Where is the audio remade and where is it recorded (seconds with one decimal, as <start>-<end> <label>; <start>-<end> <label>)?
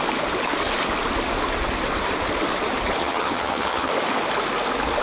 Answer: 0.0-3.0 recorded; 3.0-3.9 remade; 3.9-5.0 recorded